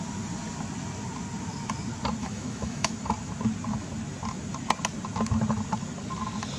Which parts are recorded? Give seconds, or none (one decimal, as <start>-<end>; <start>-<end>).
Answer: 0.0-2.2; 2.9-6.6